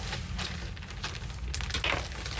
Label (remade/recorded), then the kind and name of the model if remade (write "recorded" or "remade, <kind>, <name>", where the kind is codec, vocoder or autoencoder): recorded